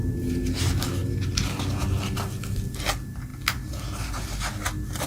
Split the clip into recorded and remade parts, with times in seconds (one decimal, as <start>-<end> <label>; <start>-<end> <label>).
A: 0.0-5.1 recorded